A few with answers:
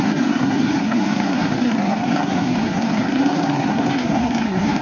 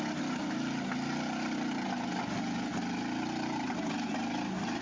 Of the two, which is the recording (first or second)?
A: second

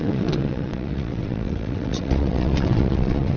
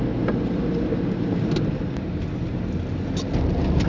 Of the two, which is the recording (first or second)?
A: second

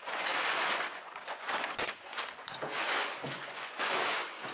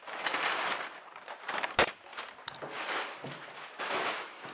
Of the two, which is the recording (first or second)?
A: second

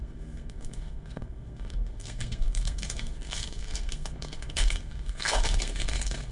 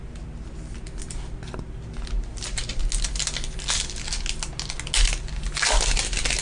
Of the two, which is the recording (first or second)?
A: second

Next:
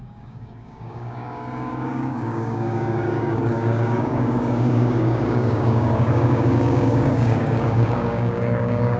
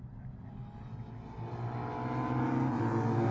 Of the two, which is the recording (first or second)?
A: second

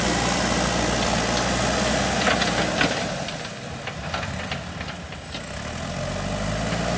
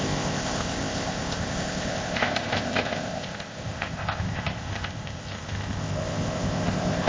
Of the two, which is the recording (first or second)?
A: first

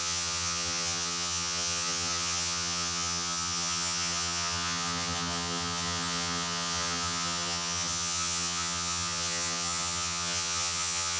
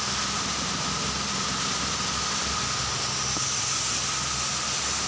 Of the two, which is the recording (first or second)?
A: second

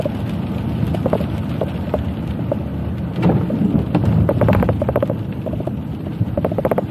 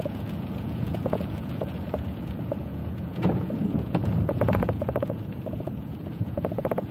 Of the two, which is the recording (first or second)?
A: first